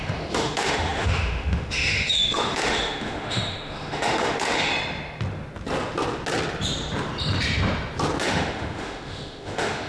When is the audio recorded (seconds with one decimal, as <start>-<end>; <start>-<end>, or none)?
4.7-8.2